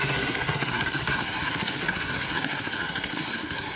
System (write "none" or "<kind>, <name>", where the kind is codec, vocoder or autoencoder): codec, SNAC